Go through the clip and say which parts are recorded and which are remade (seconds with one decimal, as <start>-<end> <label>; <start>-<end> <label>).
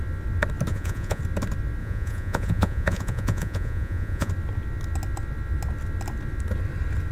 0.0-0.7 recorded; 0.7-1.2 remade; 1.2-1.8 recorded; 1.8-4.3 remade; 4.3-7.1 recorded